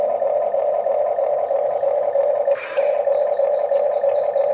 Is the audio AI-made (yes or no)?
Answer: no